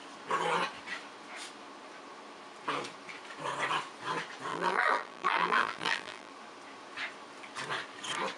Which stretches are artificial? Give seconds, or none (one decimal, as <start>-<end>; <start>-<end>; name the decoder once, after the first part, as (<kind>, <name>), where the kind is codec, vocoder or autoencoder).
4.5-6.3 (vocoder, BigVGAN v2)